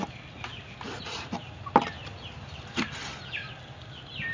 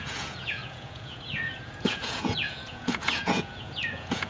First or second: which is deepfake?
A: second